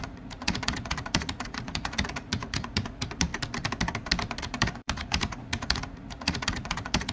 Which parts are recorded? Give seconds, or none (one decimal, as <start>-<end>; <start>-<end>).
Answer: 3.3-4.4

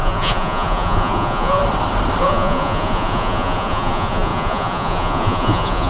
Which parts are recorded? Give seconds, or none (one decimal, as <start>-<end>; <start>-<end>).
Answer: 1.6-2.2

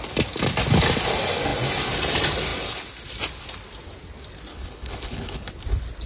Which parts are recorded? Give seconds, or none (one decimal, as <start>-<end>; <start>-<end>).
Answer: 0.0-4.5; 5.5-6.1

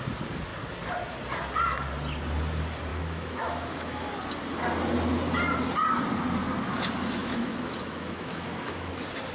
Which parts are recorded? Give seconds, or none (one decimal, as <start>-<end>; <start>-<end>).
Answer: 0.0-2.9; 4.1-7.2; 8.9-9.3

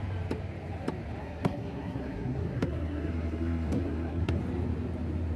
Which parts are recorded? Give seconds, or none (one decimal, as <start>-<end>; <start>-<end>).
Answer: 0.0-1.2; 4.4-5.4

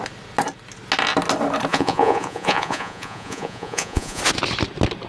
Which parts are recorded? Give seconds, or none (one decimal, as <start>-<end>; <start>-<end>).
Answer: 0.0-1.7; 4.2-5.1

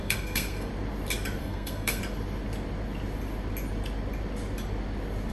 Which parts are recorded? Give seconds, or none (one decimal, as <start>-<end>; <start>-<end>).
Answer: 0.7-1.4; 2.0-5.3

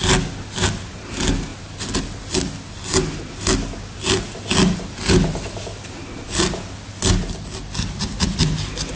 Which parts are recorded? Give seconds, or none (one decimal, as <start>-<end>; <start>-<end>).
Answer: 0.0-9.0